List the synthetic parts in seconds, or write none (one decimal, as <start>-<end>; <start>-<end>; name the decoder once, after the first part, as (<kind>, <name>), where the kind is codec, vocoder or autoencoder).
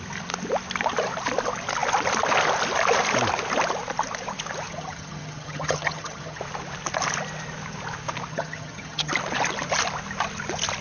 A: 4.7-6.4 (vocoder, HiFi-GAN); 8.3-9.1